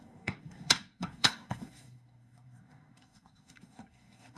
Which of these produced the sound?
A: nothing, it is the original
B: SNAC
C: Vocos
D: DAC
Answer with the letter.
B